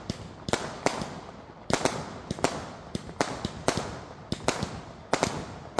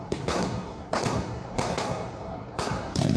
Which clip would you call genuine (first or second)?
first